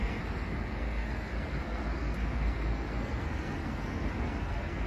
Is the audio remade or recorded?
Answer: remade